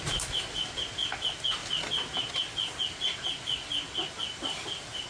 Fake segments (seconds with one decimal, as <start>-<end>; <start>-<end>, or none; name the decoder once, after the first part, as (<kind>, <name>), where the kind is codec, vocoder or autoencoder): none